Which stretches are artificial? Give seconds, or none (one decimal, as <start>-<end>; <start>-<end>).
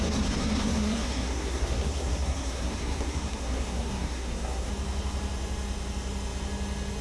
0.0-4.7